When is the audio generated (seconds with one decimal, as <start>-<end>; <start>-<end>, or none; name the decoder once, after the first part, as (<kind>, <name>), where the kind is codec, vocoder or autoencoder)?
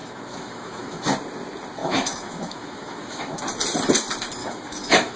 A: 0.0-1.0 (autoencoder, DAC-VAE); 1.8-3.4; 4.4-5.2